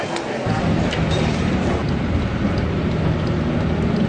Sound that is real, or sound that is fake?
real